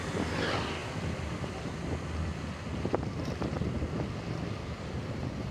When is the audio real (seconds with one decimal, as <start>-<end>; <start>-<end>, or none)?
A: 0.0-0.8; 3.8-5.5